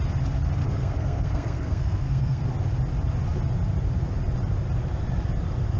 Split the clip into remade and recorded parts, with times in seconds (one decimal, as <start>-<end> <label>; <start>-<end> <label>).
0.0-0.6 recorded; 0.6-2.4 remade; 2.4-5.8 recorded